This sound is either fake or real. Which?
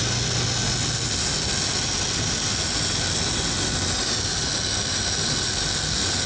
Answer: real